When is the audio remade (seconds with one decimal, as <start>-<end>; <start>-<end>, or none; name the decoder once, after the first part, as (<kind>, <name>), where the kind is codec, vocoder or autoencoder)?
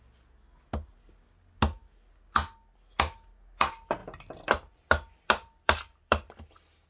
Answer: 4.0-6.3 (vocoder, BigVGAN v2)